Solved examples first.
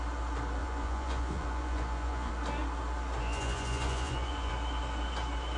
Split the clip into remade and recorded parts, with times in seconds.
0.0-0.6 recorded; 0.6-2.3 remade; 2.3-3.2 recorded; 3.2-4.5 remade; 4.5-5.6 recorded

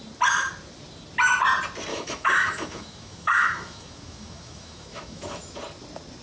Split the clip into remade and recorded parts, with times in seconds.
0.0-1.9 recorded; 1.9-5.6 remade; 5.6-6.2 recorded

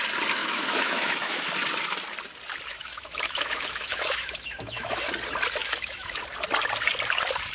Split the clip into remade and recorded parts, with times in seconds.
0.0-0.4 recorded; 0.4-1.4 remade; 1.4-2.7 recorded; 2.7-5.1 remade; 5.1-5.6 recorded; 5.6-6.2 remade; 6.2-7.5 recorded

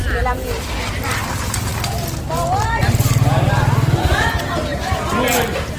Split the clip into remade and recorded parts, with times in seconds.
0.0-5.8 recorded

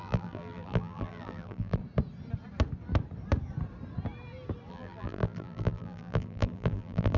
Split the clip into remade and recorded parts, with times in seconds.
0.0-1.8 remade; 1.8-4.7 recorded; 4.7-7.2 remade

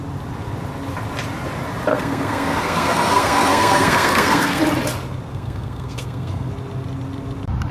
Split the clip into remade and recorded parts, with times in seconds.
0.0-1.9 recorded; 1.9-4.6 remade; 4.6-5.3 recorded; 5.3-6.5 remade; 6.5-7.7 recorded

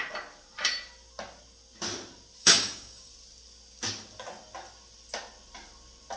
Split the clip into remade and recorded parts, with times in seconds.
0.0-2.4 recorded; 2.4-3.1 remade; 3.1-6.2 recorded